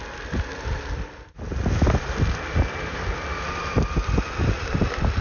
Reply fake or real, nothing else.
real